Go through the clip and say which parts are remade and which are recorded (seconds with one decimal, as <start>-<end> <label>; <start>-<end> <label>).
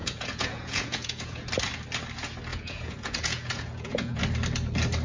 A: 0.0-1.5 remade; 1.5-2.5 recorded; 2.5-4.2 remade; 4.2-5.0 recorded